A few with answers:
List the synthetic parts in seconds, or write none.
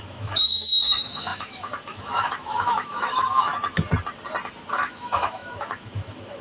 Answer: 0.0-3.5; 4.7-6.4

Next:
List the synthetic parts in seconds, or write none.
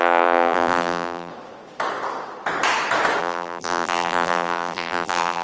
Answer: 0.0-1.3; 3.2-5.4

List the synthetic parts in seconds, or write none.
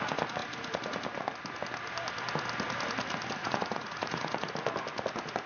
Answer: 3.4-4.5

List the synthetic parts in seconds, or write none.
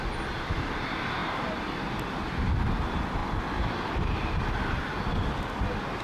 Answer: 1.2-1.8